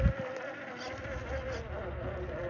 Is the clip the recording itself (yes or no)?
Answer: yes